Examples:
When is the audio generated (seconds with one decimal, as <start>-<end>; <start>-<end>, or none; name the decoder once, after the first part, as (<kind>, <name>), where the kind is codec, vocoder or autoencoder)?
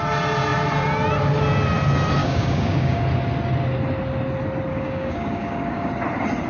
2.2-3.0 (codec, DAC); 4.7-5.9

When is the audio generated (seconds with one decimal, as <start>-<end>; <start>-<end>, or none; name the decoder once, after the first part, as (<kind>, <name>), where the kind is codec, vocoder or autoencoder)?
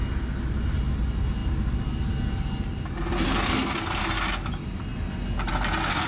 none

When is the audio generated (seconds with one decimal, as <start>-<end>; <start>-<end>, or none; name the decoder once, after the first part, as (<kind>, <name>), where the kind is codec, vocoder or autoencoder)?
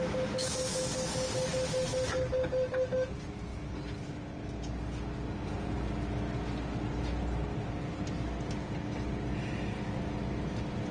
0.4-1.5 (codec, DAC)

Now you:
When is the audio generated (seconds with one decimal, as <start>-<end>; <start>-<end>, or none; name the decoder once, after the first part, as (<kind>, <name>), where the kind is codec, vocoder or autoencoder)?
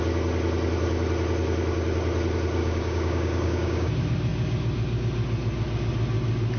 2.6-3.9 (codec, DAC)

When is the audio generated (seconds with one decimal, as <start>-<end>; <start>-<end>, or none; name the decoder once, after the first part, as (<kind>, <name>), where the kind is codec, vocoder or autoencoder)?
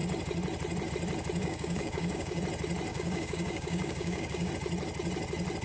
1.4-2.4 (codec, DAC); 2.9-4.5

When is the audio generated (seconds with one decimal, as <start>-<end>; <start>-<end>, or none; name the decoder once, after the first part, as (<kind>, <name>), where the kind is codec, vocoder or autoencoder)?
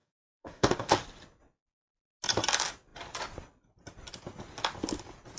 0.0-0.9 (codec, DAC)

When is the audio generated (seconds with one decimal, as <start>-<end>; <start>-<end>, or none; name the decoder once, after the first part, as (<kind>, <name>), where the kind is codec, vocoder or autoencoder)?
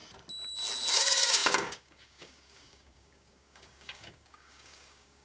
0.9-5.2 (codec, DAC)